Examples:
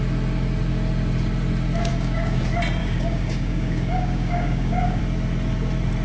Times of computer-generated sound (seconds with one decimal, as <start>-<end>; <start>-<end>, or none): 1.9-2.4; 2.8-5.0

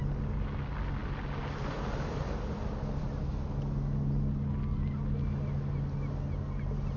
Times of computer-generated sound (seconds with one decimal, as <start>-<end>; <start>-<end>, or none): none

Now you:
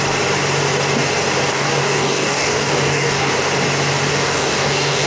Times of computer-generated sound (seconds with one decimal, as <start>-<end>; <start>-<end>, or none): 1.5-3.3; 4.1-5.1

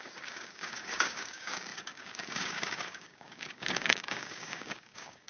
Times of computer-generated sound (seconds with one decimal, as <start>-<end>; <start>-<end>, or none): 0.0-5.3